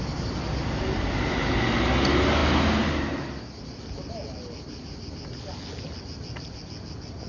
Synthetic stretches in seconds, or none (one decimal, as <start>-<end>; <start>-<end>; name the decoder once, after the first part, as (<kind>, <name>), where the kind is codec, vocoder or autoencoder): none